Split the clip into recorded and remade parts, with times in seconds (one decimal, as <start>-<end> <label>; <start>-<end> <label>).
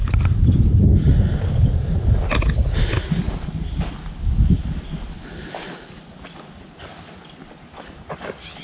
0.0-8.6 recorded